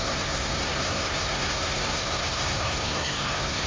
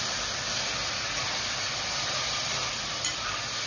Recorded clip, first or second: second